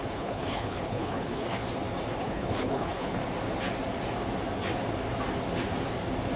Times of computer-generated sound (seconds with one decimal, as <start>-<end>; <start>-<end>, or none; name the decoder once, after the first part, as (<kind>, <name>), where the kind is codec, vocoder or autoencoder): 0.0-1.6 (codec, HILCodec); 2.2-3.2